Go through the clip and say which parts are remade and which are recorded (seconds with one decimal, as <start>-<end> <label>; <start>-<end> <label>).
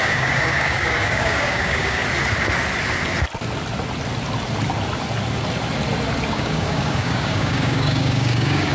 0.0-2.0 remade; 2.0-6.3 recorded; 6.3-8.7 remade